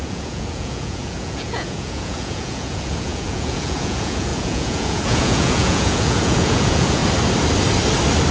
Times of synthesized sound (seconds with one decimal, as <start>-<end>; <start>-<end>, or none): 0.0-7.0